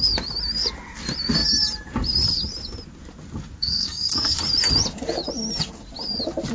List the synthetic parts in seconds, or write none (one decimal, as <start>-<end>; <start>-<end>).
3.6-4.4